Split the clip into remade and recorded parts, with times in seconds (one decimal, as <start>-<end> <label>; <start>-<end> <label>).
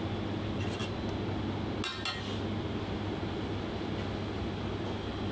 0.0-5.3 recorded